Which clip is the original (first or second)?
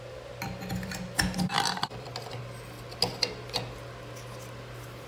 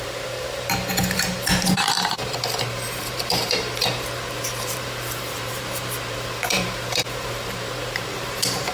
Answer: first